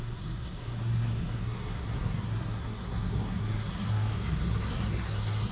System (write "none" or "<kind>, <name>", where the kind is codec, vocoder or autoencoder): codec, SNAC